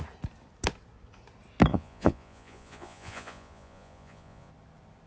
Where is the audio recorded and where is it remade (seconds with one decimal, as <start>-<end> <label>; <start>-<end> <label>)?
0.0-1.7 recorded; 1.7-4.5 remade; 4.5-5.1 recorded